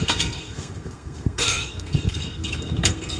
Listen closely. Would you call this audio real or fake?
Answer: fake